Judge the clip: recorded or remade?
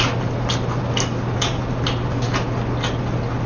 recorded